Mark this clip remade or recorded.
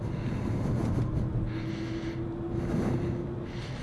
recorded